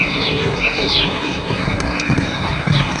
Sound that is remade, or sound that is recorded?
remade